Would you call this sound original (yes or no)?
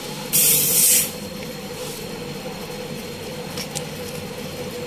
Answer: yes